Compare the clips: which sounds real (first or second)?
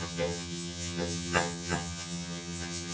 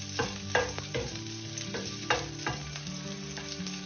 second